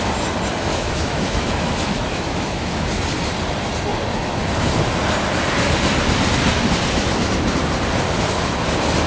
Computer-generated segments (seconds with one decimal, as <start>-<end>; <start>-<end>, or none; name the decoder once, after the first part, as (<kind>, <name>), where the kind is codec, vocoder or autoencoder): 0.7-2.9 (autoencoder, DAC-VAE)